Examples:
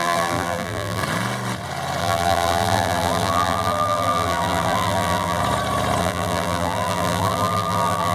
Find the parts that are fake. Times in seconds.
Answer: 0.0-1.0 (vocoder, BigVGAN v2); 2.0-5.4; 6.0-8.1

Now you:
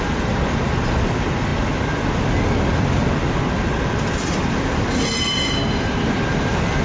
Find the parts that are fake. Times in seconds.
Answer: none

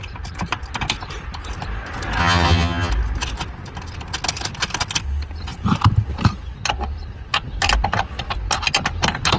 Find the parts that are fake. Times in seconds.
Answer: 2.2-2.9 (vocoder, HiFi-GAN)